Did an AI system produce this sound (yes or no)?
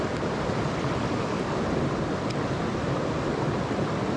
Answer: yes